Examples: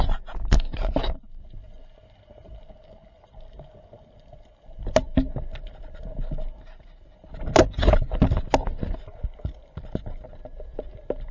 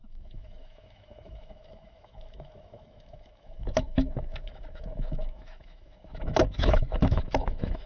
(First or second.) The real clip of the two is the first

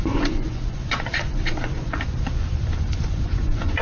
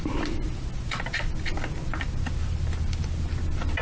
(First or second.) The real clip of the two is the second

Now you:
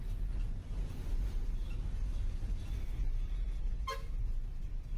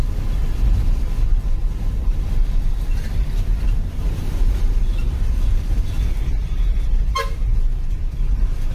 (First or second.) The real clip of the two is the first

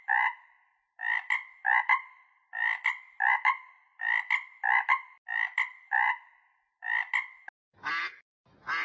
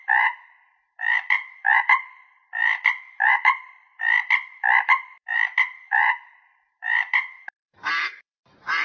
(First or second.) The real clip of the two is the first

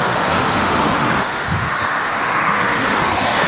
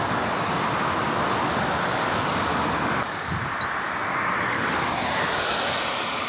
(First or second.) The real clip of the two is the second